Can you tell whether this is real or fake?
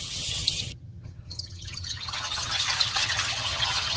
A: fake